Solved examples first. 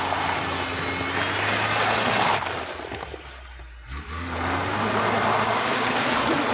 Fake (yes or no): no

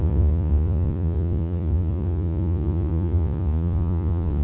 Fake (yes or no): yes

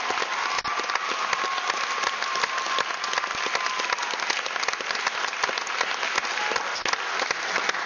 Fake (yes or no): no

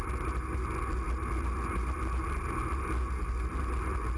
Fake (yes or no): no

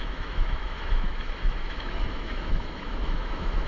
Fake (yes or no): yes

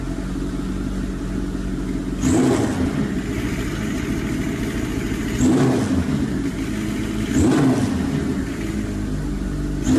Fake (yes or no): no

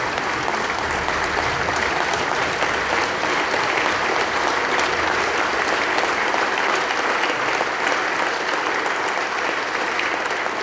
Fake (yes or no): no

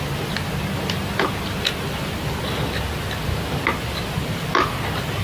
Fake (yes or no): no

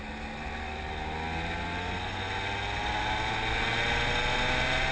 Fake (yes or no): no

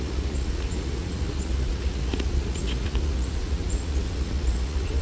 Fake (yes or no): yes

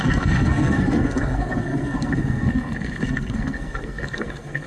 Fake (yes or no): yes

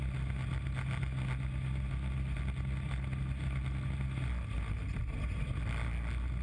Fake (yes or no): no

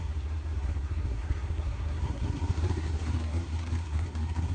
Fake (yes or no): yes